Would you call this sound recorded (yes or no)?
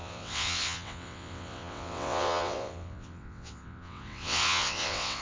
no